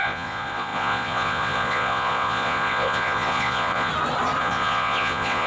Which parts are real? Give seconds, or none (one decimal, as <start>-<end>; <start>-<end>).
3.9-4.4